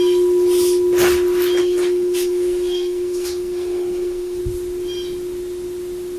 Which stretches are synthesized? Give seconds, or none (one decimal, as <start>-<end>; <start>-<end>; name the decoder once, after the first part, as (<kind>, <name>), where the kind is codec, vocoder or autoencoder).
1.6-4.4 (codec, SNAC)